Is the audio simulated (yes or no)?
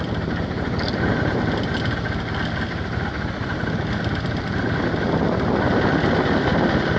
no